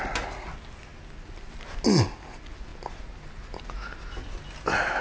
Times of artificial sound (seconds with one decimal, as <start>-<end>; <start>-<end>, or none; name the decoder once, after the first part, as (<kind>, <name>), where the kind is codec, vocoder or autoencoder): none